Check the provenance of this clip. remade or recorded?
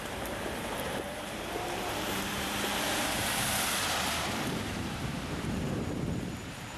remade